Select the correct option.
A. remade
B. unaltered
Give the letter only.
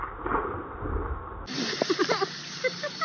A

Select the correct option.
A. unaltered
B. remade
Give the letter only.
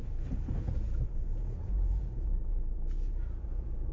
B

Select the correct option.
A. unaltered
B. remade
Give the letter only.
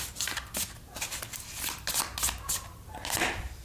A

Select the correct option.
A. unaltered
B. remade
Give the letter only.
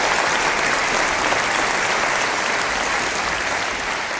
A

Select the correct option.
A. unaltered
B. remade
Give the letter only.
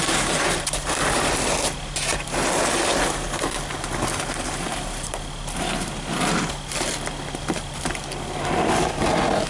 A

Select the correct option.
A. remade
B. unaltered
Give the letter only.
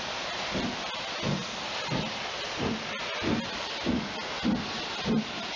B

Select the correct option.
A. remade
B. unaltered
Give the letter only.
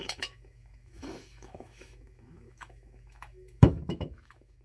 A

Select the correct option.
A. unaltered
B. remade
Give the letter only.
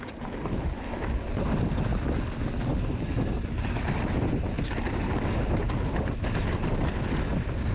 A